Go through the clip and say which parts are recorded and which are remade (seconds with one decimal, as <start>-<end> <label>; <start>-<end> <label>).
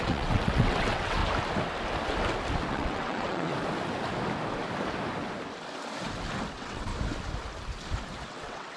0.0-1.2 remade; 1.2-2.7 recorded; 2.7-3.5 remade; 3.5-6.5 recorded; 6.5-6.9 remade; 6.9-8.3 recorded; 8.3-8.8 remade